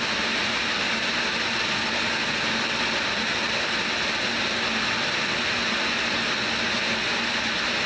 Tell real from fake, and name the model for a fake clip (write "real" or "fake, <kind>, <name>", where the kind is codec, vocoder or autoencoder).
real